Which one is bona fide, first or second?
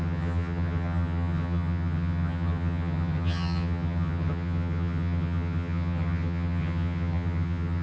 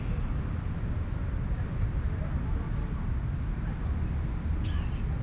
second